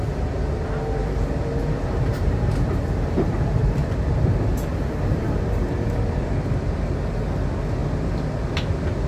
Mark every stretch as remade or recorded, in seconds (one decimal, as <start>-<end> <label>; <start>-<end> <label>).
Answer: 0.0-1.0 recorded; 1.0-5.4 remade; 5.4-9.1 recorded